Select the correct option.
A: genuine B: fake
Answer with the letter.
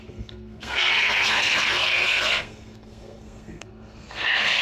B